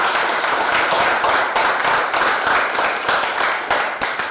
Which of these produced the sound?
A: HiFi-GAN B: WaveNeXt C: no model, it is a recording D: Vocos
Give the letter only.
C